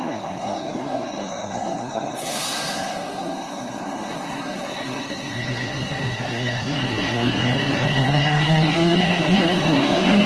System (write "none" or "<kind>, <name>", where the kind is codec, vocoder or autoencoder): codec, SNAC